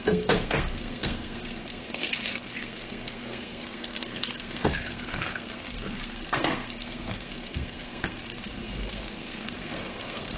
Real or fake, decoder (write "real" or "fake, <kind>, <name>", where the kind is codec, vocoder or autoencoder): fake, codec, SNAC